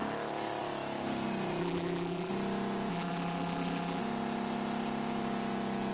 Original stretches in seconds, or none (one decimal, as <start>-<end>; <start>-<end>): 0.0-1.6; 2.3-2.9; 4.0-5.9

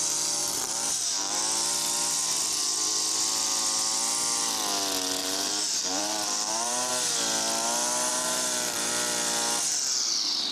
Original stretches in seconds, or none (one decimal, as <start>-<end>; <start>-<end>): 0.0-0.4; 1.4-5.2; 6.9-8.1; 8.9-10.5

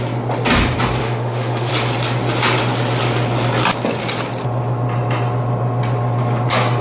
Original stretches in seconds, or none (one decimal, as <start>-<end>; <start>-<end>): 0.0-1.0; 1.7-6.8